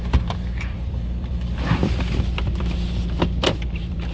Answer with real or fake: fake